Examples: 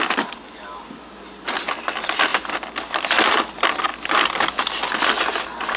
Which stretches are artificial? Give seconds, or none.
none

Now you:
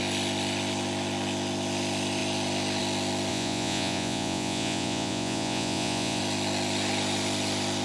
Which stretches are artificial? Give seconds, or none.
3.3-6.2 (vocoder, Vocos)

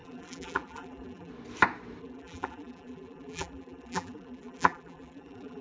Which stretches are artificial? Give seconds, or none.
0.0-1.3 (vocoder, BigVGAN v2); 2.0-5.6

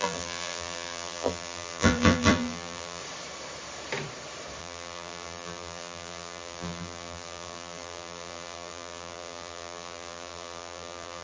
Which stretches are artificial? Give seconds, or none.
0.0-3.0 (vocoder, BigVGAN v2); 4.6-11.2

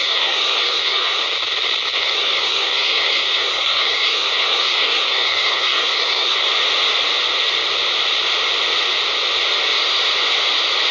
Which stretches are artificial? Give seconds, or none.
0.0-1.2 (codec, SNAC); 2.0-6.5

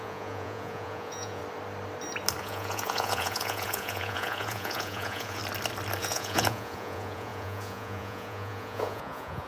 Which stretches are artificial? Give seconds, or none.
0.0-1.4 (vocoder, Vocos); 2.4-5.4; 6.0-9.5